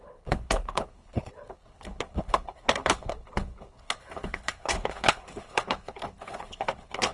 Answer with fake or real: fake